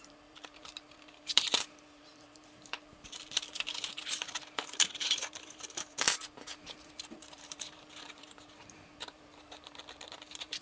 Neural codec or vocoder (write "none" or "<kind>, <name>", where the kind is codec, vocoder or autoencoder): vocoder, BigVGAN v2